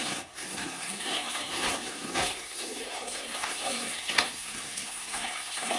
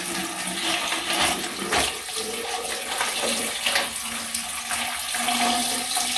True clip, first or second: second